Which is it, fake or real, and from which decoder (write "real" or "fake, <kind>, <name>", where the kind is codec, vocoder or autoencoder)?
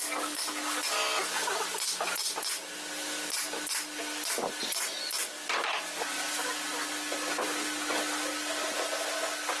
real